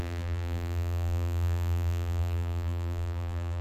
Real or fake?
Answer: fake